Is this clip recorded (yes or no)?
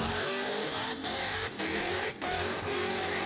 no